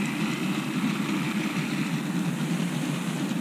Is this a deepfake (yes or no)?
no